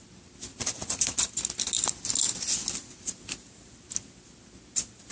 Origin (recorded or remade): recorded